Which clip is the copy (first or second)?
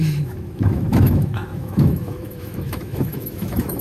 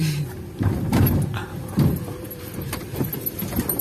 first